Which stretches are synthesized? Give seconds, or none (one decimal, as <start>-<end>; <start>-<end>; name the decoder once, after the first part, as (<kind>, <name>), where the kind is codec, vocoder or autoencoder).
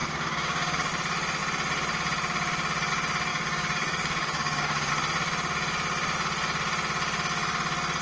0.0-0.9 (codec, DAC); 3.3-4.9